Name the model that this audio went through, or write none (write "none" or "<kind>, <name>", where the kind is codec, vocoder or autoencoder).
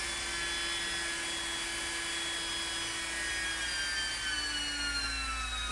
none